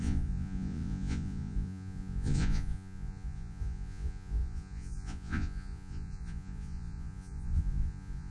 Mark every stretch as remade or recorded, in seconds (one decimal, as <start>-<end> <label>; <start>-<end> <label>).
0.0-8.3 remade